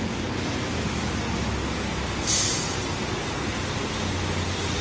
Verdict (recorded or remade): recorded